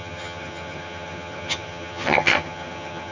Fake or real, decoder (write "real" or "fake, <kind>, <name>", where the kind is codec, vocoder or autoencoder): fake, vocoder, HiFi-GAN